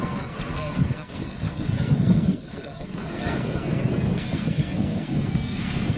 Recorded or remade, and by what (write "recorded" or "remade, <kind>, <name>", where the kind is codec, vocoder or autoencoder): remade, codec, SNAC